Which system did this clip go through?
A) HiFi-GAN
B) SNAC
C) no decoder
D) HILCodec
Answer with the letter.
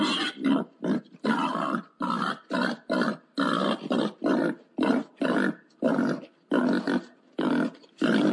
C